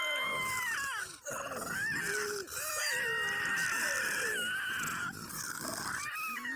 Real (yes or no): yes